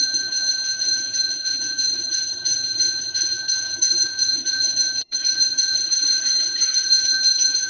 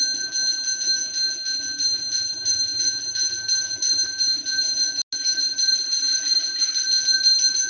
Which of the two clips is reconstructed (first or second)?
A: first